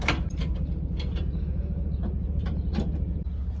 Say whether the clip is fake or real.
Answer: real